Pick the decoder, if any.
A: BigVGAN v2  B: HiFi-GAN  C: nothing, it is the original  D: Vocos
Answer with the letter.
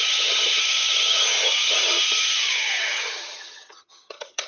B